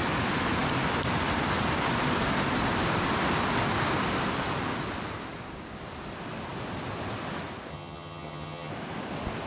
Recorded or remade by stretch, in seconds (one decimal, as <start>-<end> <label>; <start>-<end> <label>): 0.0-7.7 recorded; 7.7-8.7 remade; 8.7-9.5 recorded